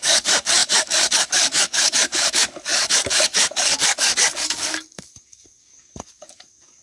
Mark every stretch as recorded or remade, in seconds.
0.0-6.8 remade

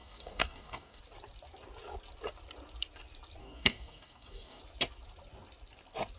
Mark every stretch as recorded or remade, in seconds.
0.0-1.0 remade; 1.0-3.4 recorded; 3.4-4.6 remade; 4.6-6.2 recorded

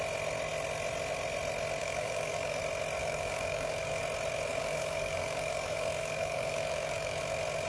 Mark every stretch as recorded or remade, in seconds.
0.0-1.8 recorded; 1.8-2.6 remade; 2.6-3.0 recorded; 3.0-4.0 remade; 4.0-4.5 recorded; 4.5-7.2 remade; 7.2-7.7 recorded

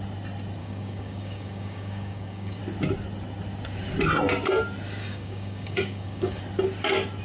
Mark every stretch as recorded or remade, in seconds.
0.0-0.6 recorded; 0.6-2.6 remade; 2.6-5.0 recorded; 5.0-6.4 remade; 6.4-7.2 recorded